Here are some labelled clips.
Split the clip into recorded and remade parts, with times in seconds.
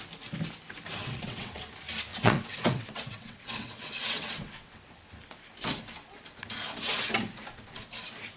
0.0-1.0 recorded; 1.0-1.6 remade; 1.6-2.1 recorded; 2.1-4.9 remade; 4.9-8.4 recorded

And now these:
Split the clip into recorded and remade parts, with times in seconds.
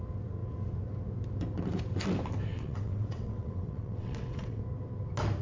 0.0-2.5 recorded; 2.5-4.6 remade; 4.6-5.4 recorded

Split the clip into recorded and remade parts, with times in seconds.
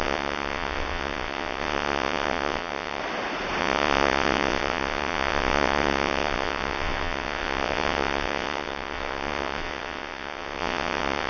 0.0-3.0 remade; 3.0-3.6 recorded; 3.6-11.3 remade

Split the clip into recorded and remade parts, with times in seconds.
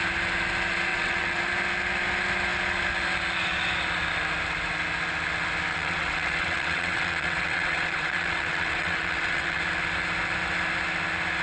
0.0-0.9 recorded; 0.9-1.4 remade; 1.4-5.7 recorded; 5.7-9.6 remade; 9.6-11.4 recorded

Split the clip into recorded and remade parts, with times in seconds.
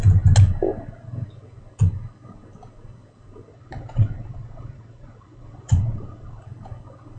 0.0-3.5 recorded; 3.5-6.4 remade; 6.4-7.2 recorded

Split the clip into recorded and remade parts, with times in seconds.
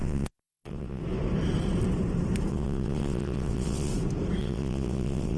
0.0-1.0 remade; 1.0-2.5 recorded; 2.5-3.9 remade; 3.9-4.4 recorded; 4.4-5.4 remade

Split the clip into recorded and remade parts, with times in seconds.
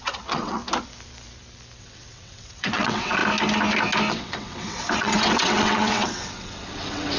0.0-0.6 remade; 0.6-1.8 recorded; 1.8-3.2 remade; 3.2-4.1 recorded; 4.1-7.2 remade